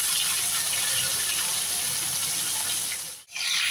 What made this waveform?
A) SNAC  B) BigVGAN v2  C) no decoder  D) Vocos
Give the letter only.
C